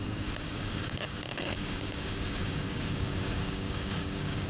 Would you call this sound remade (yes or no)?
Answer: yes